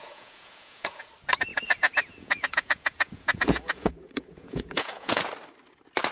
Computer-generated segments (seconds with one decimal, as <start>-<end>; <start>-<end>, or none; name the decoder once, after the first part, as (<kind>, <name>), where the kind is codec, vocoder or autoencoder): 0.0-1.1 (vocoder, Vocos); 1.5-5.2